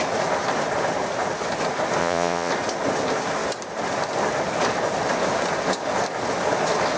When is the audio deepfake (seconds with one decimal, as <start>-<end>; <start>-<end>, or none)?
2.0-2.5